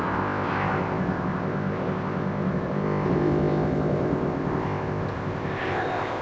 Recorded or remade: remade